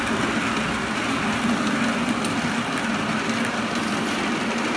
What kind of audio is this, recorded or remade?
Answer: recorded